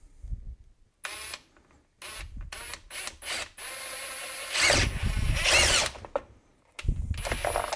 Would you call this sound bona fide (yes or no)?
yes